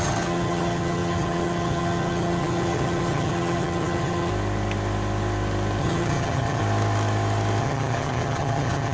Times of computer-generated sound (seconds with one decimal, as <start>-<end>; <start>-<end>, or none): 0.0-4.3; 5.8-6.6; 7.6-8.9